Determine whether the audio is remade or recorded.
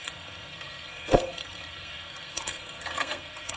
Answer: remade